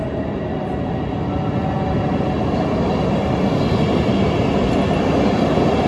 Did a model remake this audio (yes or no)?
no